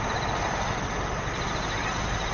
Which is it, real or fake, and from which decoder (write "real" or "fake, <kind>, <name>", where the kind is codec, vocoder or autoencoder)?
real